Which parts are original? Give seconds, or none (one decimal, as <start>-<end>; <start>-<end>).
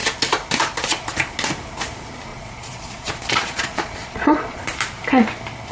0.0-2.3; 4.6-5.7